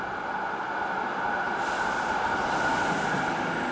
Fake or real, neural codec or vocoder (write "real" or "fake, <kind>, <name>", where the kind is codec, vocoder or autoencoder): real